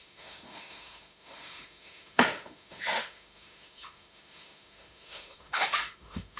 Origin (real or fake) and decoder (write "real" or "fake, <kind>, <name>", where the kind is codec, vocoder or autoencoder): fake, autoencoder, DAC-VAE